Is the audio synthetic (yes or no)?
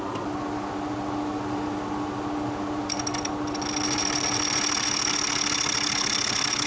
no